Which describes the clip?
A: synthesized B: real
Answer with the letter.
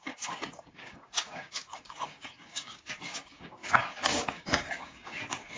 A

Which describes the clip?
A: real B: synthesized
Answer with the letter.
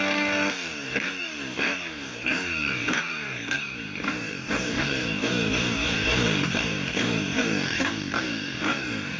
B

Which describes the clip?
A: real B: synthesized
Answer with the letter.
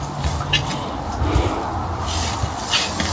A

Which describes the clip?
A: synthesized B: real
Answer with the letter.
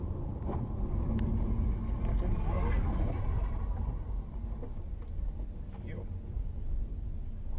B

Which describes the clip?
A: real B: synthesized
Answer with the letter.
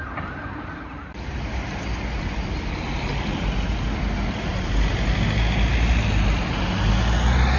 A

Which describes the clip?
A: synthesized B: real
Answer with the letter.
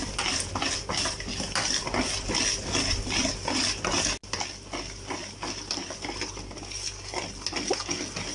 B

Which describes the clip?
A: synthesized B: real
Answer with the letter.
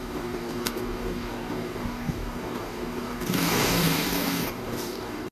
A